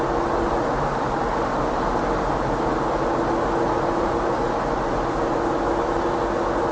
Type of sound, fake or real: real